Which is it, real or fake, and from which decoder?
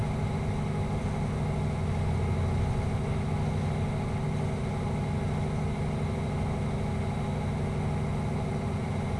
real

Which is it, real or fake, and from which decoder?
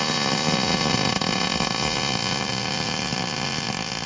real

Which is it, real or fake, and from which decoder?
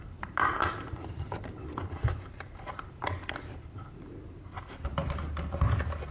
fake, vocoder, BigVGAN v2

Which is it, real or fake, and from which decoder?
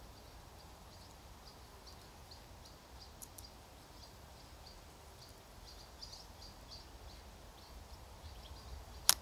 real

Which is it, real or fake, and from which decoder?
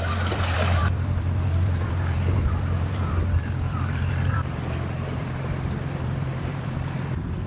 fake, vocoder, BigVGAN v2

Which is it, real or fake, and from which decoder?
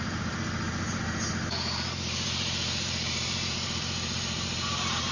fake, vocoder, BigVGAN v2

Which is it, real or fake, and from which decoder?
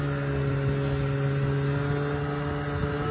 real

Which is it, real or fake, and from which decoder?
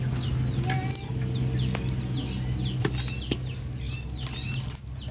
real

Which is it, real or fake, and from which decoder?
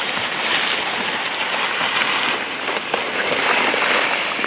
real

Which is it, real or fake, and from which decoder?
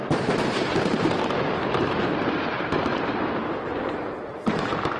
fake, vocoder, BigVGAN v2